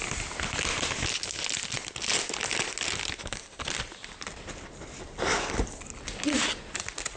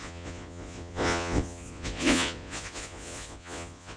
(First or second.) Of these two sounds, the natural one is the first